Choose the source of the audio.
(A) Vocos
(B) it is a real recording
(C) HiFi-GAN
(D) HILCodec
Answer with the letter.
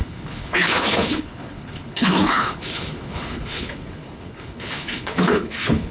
D